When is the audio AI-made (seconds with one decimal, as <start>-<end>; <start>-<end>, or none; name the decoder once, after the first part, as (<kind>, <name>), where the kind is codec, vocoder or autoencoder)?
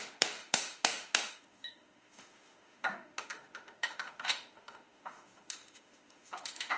0.0-6.8 (autoencoder, DAC-VAE)